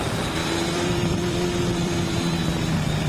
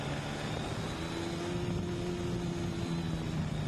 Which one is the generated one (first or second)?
first